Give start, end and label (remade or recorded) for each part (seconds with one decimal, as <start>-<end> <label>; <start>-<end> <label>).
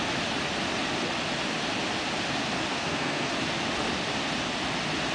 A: 0.0-2.7 recorded; 2.7-3.3 remade; 3.3-5.1 recorded